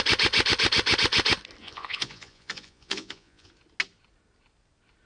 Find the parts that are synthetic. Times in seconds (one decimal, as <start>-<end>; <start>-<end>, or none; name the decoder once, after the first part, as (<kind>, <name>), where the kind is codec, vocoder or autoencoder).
1.6-3.5 (vocoder, Vocos)